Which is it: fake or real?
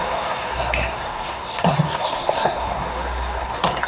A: fake